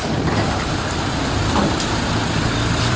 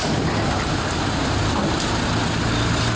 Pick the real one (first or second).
second